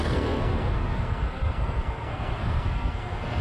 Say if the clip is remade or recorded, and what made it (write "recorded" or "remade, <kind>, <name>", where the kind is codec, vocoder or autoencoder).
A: remade, codec, SNAC